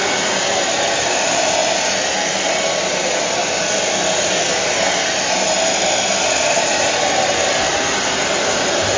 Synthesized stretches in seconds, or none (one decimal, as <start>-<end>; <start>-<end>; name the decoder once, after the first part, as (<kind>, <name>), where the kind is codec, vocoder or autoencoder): none